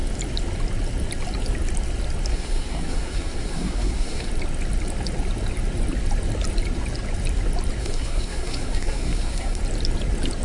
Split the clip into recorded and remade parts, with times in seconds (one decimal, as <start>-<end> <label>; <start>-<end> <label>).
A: 0.0-2.3 recorded; 2.3-4.3 remade; 4.3-7.8 recorded; 7.8-9.6 remade; 9.6-10.4 recorded